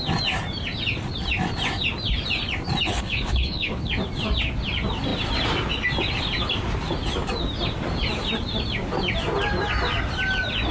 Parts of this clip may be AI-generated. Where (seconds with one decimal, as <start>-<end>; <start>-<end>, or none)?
2.9-3.9

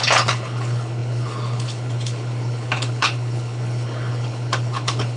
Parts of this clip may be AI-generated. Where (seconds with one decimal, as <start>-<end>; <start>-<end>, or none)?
0.0-5.2